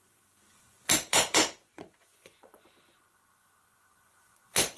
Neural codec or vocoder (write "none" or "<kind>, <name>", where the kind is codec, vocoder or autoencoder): vocoder, Vocos